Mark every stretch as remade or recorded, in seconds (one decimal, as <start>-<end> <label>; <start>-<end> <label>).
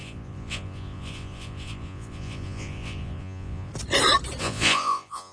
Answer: 0.0-3.7 remade; 3.7-4.4 recorded; 4.4-5.3 remade